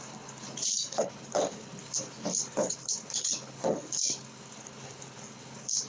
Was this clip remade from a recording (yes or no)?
yes